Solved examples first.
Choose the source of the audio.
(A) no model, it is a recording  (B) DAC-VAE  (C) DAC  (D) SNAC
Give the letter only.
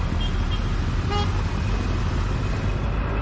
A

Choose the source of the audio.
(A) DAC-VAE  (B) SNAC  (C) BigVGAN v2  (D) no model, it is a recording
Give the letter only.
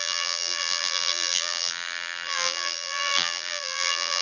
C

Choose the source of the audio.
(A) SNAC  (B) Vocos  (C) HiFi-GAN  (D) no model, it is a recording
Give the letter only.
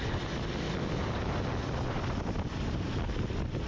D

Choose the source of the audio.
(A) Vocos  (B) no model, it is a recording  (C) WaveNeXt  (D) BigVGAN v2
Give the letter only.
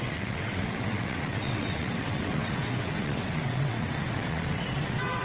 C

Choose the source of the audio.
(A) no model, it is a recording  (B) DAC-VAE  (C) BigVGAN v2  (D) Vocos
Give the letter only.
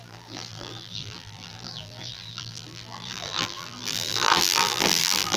C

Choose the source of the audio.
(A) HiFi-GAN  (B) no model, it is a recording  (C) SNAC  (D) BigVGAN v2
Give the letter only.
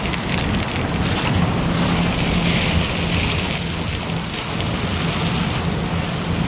B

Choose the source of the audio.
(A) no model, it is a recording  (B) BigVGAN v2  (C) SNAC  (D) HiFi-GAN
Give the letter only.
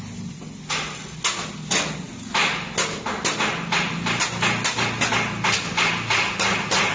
A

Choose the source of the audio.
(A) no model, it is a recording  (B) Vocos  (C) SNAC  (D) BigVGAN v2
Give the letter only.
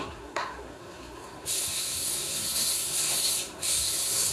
C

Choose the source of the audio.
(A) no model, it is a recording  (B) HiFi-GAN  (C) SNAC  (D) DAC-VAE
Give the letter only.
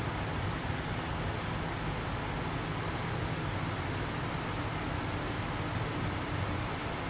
A